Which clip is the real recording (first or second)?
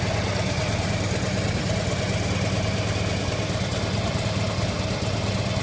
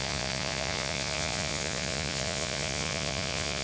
first